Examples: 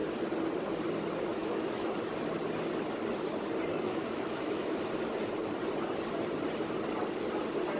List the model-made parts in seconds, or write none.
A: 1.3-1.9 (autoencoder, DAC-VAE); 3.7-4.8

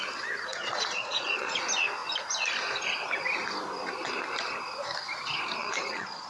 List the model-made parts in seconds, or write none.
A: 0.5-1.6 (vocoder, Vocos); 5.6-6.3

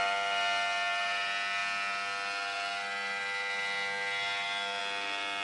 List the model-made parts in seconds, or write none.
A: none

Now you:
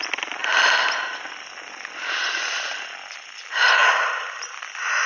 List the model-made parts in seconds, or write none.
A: none

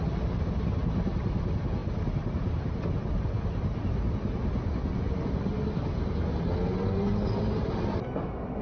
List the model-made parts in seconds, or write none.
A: none

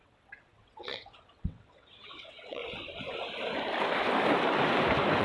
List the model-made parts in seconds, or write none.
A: 0.0-2.6 (vocoder, WaveNeXt)

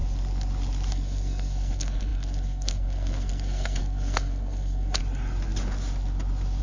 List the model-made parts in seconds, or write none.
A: 0.9-5.0 (codec, SNAC)